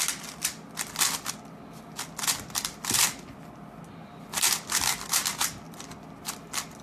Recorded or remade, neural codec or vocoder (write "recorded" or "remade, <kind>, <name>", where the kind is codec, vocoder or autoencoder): recorded